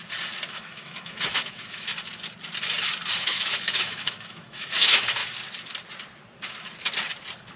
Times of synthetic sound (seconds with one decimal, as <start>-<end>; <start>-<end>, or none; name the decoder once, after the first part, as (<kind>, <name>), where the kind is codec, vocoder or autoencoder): 0.5-1.9 (autoencoder, DAC-VAE); 3.2-5.2